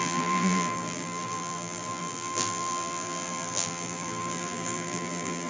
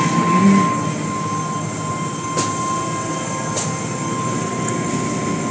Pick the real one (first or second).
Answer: second